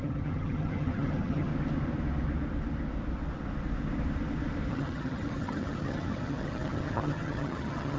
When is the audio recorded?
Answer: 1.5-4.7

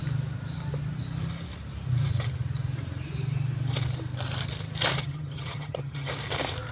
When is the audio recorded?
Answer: 0.0-5.0; 6.1-6.7